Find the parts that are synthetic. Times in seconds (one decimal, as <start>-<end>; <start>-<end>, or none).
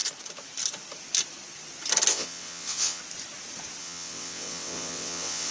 2.1-3.0; 3.8-5.5